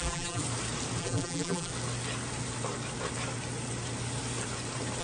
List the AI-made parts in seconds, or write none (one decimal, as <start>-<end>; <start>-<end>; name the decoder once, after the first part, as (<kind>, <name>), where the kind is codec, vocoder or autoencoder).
0.0-0.4 (vocoder, BigVGAN v2); 1.0-1.7